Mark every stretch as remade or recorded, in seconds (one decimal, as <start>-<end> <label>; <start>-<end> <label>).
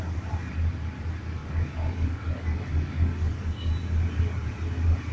0.0-1.4 recorded; 1.4-3.7 remade; 3.7-5.1 recorded